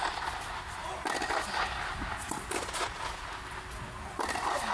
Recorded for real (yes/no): yes